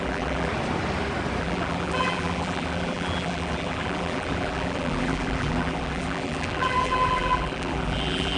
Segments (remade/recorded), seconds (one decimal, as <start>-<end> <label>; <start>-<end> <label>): 0.0-0.5 remade; 0.5-1.4 recorded; 1.4-8.4 remade